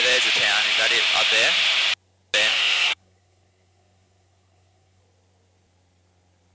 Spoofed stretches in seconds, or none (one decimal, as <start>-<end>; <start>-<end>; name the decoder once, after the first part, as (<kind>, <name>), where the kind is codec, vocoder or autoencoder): 2.5-5.0 (codec, SNAC)